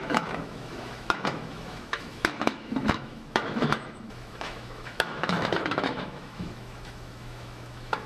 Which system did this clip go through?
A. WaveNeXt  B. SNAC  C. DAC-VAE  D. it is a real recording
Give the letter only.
C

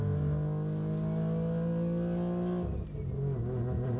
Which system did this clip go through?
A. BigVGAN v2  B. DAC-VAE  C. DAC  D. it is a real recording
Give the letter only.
D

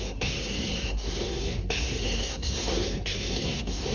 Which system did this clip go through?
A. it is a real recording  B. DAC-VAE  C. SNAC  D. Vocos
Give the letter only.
C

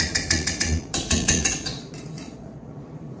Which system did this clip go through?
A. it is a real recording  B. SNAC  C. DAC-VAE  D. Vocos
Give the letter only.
D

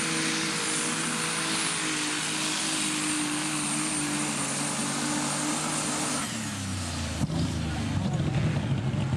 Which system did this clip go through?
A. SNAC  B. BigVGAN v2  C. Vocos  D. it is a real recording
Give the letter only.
D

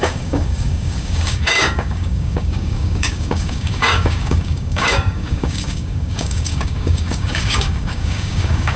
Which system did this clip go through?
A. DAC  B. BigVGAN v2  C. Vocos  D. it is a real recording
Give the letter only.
A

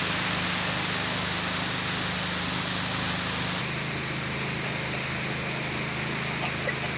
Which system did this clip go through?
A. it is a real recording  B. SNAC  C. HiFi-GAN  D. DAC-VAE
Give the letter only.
A